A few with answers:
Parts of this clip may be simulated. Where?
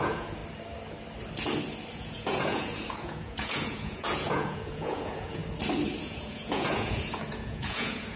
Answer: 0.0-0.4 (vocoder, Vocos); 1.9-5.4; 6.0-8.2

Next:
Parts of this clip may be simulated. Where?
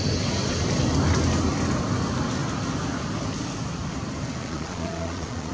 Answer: 4.4-5.5 (vocoder, Vocos)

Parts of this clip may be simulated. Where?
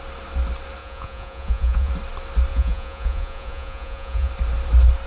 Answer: 0.8-1.9 (vocoder, Vocos); 2.5-4.3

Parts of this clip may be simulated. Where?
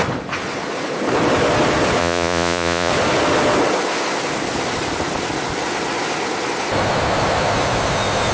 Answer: 2.0-2.9 (vocoder, Vocos)